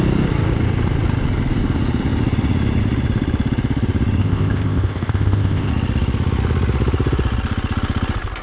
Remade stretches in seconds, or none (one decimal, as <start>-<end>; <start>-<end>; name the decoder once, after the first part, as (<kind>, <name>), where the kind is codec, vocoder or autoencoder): 4.2-5.7 (codec, ZipCodec)